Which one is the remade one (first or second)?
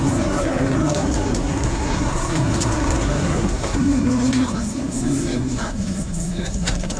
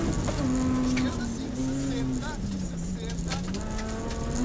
first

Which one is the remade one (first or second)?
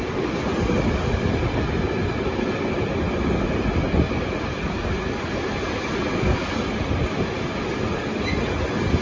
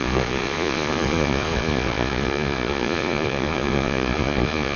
second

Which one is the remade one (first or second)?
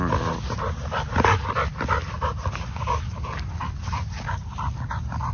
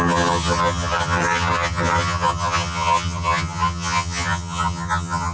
second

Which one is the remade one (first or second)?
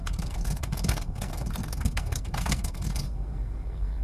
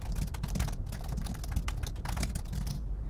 first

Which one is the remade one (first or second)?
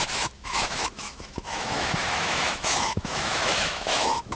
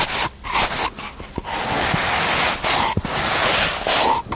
first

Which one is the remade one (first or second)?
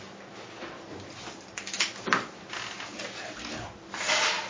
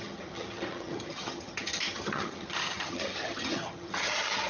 second